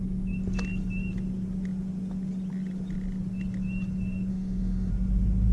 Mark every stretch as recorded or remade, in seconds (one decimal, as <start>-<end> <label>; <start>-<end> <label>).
0.0-4.3 recorded; 4.3-4.9 remade; 4.9-5.5 recorded